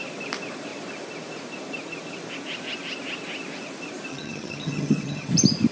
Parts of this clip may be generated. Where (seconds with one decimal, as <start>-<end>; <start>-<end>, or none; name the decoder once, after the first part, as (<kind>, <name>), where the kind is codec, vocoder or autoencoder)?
4.1-5.3 (vocoder, HiFi-GAN)